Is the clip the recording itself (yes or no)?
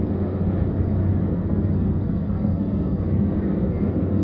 no